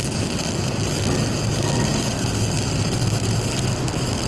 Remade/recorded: recorded